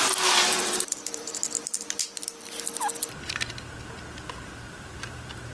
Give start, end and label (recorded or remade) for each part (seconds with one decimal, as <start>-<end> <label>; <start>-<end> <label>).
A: 0.0-1.4 remade; 1.4-4.7 recorded; 4.7-5.5 remade